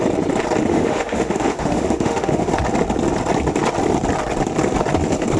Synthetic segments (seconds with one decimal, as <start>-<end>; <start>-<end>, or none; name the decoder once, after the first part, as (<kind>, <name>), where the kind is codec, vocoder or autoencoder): 0.7-2.5 (autoencoder, DAC-VAE)